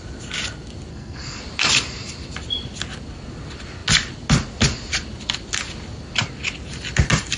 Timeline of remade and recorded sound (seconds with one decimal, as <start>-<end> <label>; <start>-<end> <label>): 0.0-0.9 recorded; 0.9-1.4 remade; 1.4-7.4 recorded